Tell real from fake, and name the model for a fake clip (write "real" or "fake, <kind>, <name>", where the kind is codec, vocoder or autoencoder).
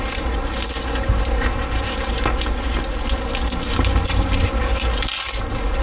real